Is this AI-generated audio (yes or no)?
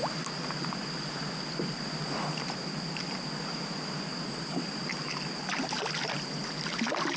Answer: no